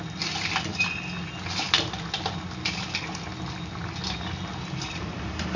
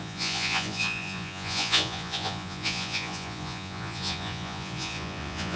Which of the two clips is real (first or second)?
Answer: first